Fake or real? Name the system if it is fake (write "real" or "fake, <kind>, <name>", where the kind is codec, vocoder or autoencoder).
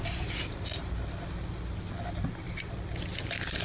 real